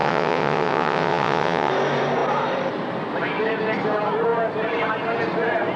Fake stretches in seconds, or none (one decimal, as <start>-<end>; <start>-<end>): 0.0-1.7